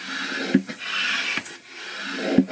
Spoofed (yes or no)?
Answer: no